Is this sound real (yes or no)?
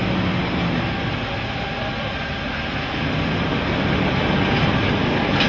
yes